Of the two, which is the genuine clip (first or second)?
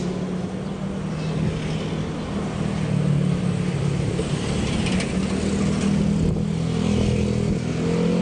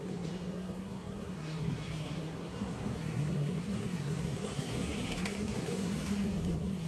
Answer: first